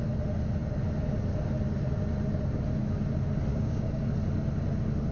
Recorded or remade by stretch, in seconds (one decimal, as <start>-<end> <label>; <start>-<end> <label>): 0.0-3.5 recorded; 3.5-4.1 remade; 4.1-5.1 recorded